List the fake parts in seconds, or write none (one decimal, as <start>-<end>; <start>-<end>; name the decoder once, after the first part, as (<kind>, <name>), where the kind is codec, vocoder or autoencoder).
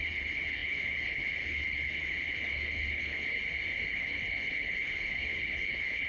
0.0-3.4 (codec, HILCodec); 3.9-6.1